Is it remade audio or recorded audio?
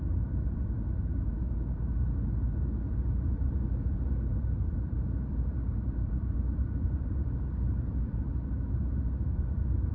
remade